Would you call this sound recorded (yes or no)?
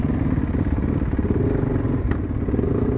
yes